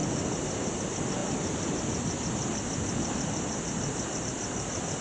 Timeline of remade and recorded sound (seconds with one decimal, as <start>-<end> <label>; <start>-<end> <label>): 0.0-0.7 remade; 0.7-5.0 recorded